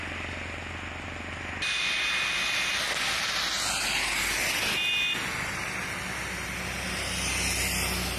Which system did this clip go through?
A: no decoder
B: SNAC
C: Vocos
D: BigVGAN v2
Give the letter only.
A